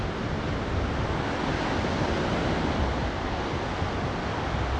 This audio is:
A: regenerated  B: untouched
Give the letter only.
B